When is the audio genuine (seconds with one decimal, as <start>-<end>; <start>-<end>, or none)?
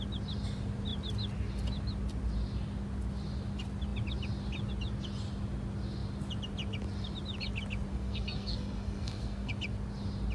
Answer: 0.0-7.9; 9.5-10.3